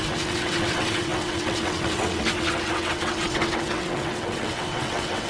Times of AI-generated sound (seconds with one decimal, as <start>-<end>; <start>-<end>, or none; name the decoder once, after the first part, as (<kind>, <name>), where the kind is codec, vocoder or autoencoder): 0.0-5.3 (vocoder, WaveNeXt)